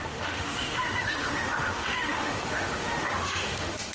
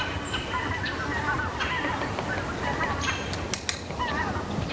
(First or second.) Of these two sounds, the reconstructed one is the first